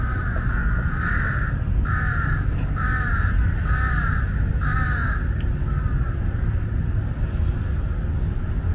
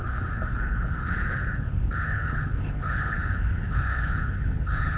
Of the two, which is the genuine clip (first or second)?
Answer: first